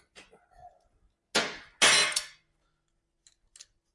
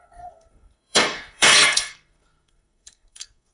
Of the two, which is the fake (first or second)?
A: second